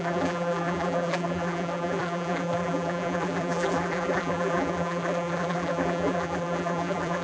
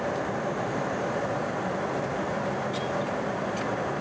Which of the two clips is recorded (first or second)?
second